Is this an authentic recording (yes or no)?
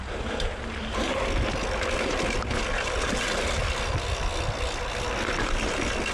yes